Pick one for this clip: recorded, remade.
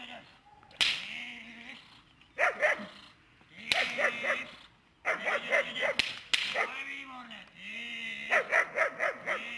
recorded